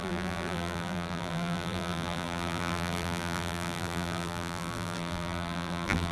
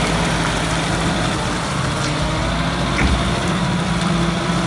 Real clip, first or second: second